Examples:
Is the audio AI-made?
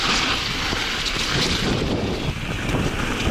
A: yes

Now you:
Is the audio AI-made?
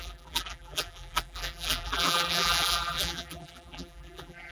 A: yes